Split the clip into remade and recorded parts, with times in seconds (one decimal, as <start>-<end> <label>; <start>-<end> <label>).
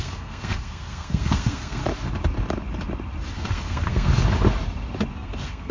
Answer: 0.0-1.8 remade; 1.8-3.3 recorded; 3.3-4.1 remade; 4.1-5.1 recorded; 5.1-5.7 remade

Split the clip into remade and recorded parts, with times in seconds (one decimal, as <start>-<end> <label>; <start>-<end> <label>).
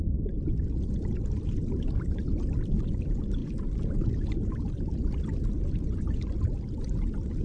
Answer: 0.0-3.4 remade; 3.4-3.9 recorded; 3.9-7.4 remade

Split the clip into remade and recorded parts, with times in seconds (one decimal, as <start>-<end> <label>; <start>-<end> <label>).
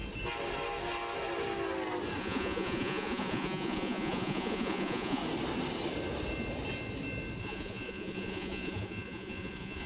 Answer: 0.0-2.2 recorded; 2.2-5.2 remade; 5.2-7.4 recorded; 7.4-9.9 remade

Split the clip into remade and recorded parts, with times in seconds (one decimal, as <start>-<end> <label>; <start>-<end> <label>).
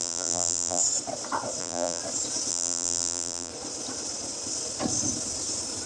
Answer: 0.0-0.8 remade; 0.8-1.6 recorded; 1.6-2.0 remade; 2.0-2.5 recorded; 2.5-3.5 remade; 3.5-5.9 recorded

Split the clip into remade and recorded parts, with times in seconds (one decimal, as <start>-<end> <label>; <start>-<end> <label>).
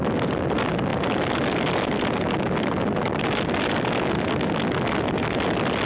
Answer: 0.0-5.8 recorded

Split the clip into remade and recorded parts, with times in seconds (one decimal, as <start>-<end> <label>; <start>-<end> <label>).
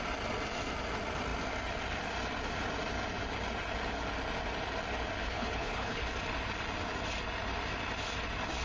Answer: 0.0-5.2 recorded; 5.2-6.0 remade; 6.0-8.6 recorded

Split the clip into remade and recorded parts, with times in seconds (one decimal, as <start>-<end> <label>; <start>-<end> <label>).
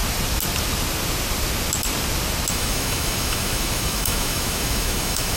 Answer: 0.0-2.5 recorded; 2.5-5.4 remade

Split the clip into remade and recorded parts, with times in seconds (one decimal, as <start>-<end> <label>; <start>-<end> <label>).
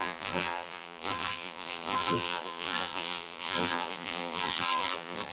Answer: 0.0-5.3 remade